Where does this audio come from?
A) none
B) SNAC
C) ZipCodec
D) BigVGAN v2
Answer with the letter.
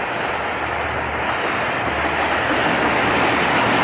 A